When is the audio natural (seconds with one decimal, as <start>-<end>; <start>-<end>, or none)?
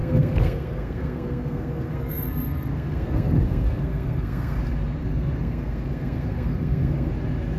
4.6-5.0; 7.1-7.6